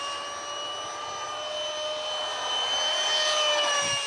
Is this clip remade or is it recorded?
recorded